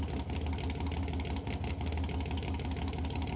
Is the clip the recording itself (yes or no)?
yes